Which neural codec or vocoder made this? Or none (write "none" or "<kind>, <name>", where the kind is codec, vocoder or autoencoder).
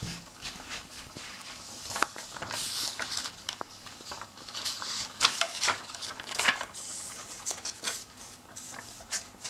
codec, DAC